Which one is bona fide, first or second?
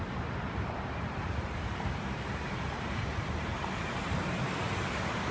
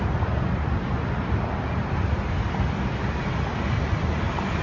second